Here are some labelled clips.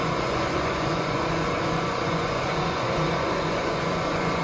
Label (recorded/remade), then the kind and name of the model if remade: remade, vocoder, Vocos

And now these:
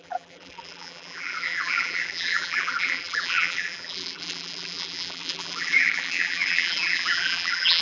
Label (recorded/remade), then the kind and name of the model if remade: remade, vocoder, BigVGAN v2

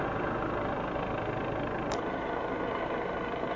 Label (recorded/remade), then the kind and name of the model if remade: recorded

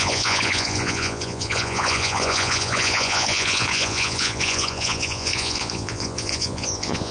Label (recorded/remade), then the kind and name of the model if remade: remade, vocoder, Vocos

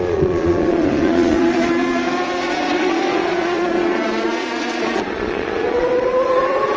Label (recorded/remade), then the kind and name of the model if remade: remade, vocoder, Vocos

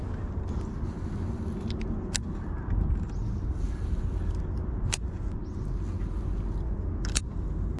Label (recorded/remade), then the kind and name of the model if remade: recorded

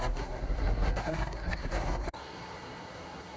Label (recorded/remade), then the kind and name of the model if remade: remade, codec, SNAC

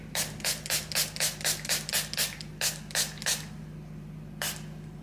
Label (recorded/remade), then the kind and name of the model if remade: recorded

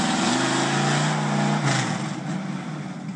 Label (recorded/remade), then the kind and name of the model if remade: recorded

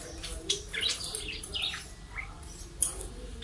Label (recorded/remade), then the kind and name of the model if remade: remade, vocoder, BigVGAN v2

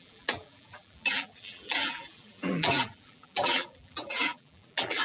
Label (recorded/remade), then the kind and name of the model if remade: remade, vocoder, BigVGAN v2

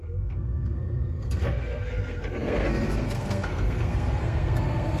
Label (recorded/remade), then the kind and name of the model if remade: remade, codec, SNAC